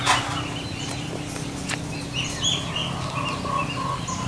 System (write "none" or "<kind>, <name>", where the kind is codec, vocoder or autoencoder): none